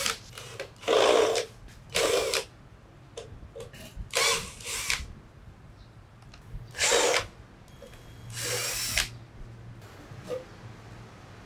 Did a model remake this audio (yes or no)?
no